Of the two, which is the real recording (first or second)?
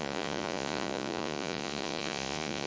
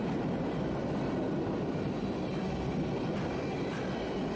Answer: second